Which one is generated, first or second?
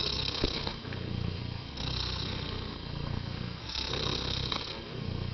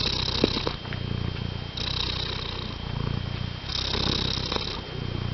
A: first